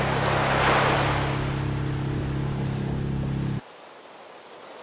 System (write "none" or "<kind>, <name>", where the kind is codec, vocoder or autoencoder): none